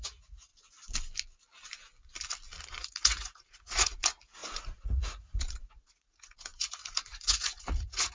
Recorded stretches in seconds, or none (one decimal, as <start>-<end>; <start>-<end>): 0.5-2.8